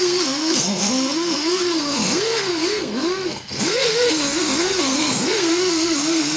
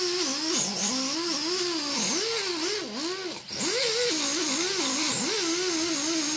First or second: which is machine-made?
first